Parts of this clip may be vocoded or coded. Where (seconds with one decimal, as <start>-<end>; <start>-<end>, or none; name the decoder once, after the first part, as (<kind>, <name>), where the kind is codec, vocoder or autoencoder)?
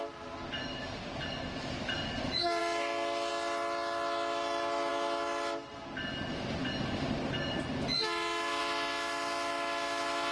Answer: none